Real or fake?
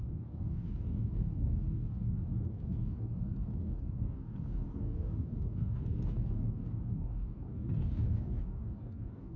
fake